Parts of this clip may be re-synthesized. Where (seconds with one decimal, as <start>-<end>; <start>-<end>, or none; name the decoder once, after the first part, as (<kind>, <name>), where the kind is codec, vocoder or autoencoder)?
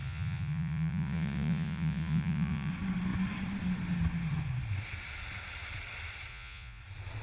0.0-2.7 (vocoder, Vocos); 6.3-6.8